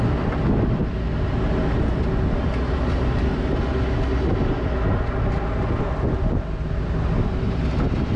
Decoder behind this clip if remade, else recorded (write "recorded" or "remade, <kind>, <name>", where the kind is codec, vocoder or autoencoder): recorded